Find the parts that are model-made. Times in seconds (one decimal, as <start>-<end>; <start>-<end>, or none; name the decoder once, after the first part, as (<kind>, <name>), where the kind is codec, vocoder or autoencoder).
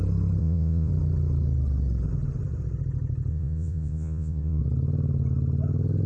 0.4-0.9 (vocoder, Vocos); 3.3-4.6